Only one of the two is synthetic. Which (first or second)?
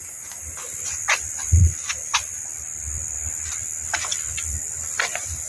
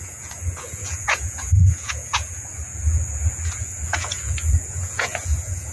second